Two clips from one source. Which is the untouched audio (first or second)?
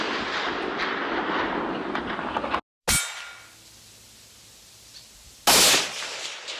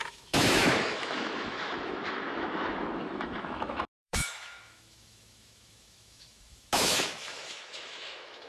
first